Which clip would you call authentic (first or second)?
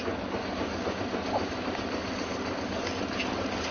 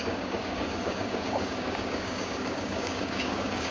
first